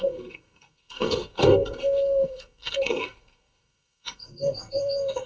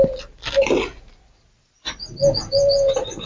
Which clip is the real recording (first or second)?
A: second